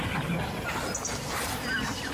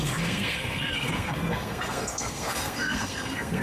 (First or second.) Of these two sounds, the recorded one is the first